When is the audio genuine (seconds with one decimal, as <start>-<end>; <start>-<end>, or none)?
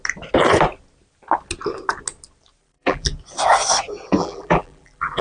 0.0-2.6; 3.1-4.2